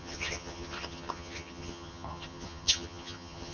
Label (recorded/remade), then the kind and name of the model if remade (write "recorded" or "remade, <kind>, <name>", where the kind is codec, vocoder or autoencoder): remade, vocoder, HiFi-GAN